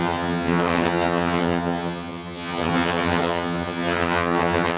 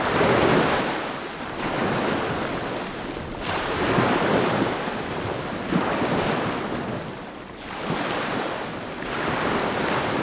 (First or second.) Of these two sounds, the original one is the second